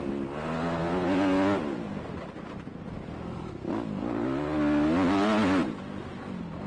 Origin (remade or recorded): recorded